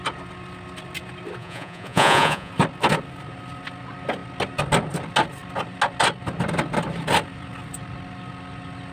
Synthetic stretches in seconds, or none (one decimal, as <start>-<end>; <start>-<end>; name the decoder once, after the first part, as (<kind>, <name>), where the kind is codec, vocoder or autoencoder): 1.4-2.5 (vocoder, Vocos)